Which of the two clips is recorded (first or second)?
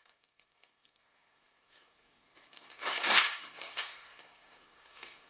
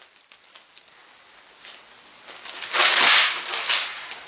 second